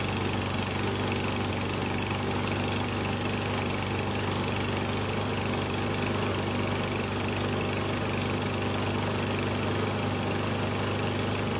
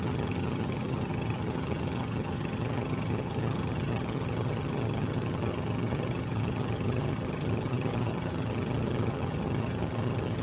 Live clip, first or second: first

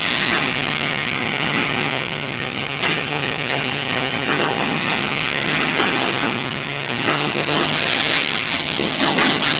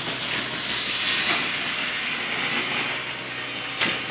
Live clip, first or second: second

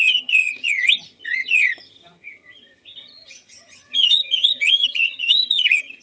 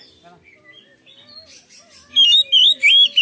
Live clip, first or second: second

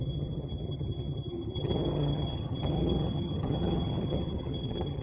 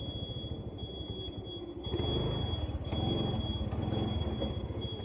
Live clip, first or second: second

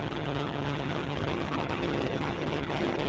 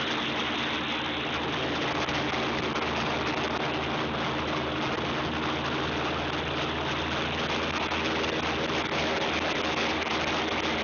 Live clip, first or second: second